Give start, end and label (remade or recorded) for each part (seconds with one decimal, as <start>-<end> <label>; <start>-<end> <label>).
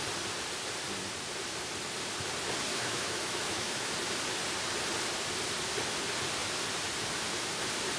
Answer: 0.0-2.7 recorded; 2.7-3.9 remade; 3.9-8.0 recorded